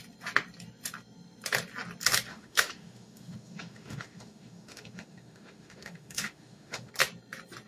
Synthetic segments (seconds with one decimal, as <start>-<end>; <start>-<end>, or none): 2.3-6.9